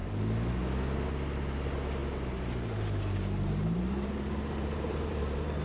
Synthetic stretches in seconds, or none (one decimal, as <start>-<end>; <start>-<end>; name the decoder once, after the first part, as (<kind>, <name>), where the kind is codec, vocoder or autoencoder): 2.0-5.6 (vocoder, BigVGAN v2)